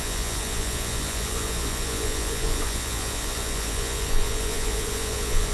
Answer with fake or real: fake